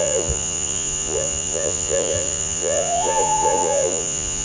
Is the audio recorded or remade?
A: remade